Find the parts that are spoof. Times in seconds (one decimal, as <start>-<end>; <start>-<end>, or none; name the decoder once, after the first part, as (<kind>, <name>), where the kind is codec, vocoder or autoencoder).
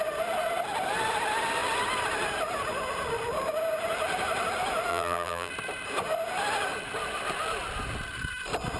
4.9-5.5 (vocoder, BigVGAN v2)